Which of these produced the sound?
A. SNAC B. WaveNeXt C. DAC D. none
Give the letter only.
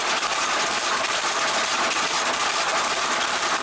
D